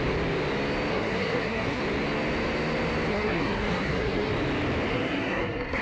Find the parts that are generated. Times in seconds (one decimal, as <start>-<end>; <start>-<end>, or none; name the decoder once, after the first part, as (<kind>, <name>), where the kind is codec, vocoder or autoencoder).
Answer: 0.9-1.8 (codec, SNAC); 3.1-4.3; 4.9-5.8